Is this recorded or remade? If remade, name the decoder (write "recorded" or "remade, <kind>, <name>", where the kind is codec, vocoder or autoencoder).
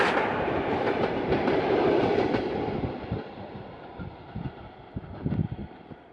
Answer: remade, vocoder, BigVGAN v2